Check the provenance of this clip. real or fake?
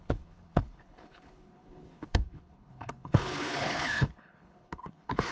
fake